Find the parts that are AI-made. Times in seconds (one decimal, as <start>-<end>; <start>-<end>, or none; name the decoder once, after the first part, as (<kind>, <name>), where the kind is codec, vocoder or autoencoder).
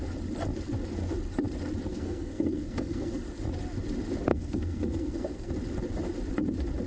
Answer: 1.9-3.1 (codec, SNAC); 4.3-5.5